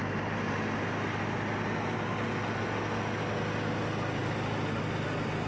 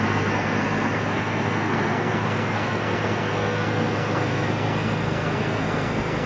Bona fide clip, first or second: first